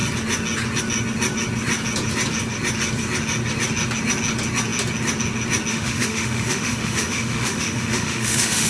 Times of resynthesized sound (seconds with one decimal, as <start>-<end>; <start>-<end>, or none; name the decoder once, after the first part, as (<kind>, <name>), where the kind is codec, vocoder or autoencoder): 5.7-8.7 (autoencoder, DAC-VAE)